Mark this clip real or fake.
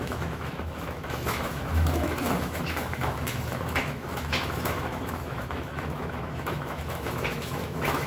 fake